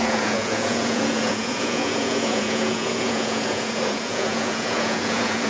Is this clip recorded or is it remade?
remade